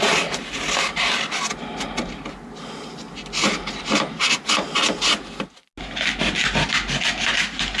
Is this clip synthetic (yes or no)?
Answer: no